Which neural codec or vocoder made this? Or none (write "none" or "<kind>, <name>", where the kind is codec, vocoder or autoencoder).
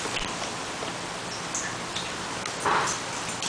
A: none